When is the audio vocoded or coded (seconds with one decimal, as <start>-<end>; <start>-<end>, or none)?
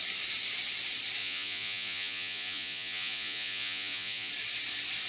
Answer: 1.2-4.3